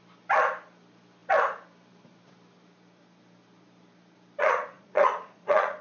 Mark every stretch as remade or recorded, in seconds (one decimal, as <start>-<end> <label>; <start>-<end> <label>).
0.0-4.4 recorded; 4.4-5.8 remade